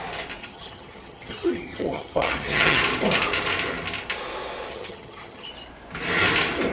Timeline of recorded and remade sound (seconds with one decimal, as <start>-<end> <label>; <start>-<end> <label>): 0.0-0.4 recorded; 0.4-2.8 remade; 2.8-4.7 recorded; 4.7-5.5 remade; 5.5-6.7 recorded